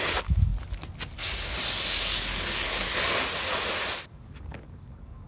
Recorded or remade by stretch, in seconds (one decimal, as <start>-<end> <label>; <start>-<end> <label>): 0.0-0.5 remade; 0.5-1.9 recorded; 1.9-2.9 remade; 2.9-4.1 recorded; 4.1-5.3 remade

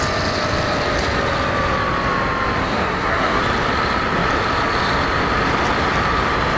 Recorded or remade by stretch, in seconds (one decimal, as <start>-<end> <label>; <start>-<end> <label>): 0.0-2.6 recorded; 2.6-3.4 remade; 3.4-6.6 recorded

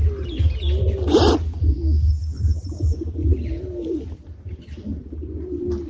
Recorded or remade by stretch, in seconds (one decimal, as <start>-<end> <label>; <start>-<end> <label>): 0.0-5.9 recorded

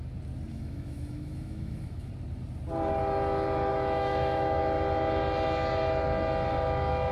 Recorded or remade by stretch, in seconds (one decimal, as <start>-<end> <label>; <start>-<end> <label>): 0.0-0.5 recorded; 0.5-2.1 remade; 2.1-3.7 recorded; 3.7-4.6 remade; 4.6-7.1 recorded

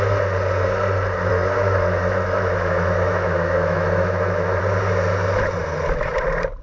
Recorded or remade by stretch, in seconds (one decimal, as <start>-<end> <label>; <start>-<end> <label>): 0.0-1.3 recorded; 1.3-4.6 remade; 4.6-6.6 recorded

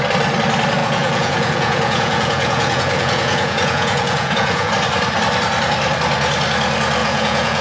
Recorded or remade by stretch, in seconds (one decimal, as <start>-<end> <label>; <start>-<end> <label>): 0.0-0.8 recorded; 0.8-4.7 remade; 4.7-7.0 recorded; 7.0-7.6 remade

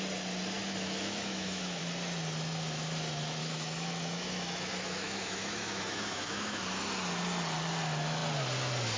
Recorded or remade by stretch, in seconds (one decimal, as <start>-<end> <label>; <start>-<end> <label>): 0.0-0.6 recorded; 0.6-1.8 remade; 1.8-3.4 recorded; 3.4-6.6 remade; 6.6-9.0 recorded